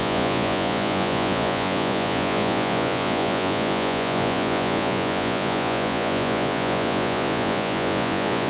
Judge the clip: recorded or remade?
remade